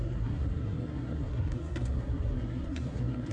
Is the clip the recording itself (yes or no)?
no